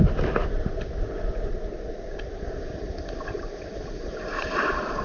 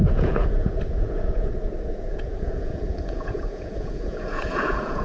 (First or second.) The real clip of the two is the first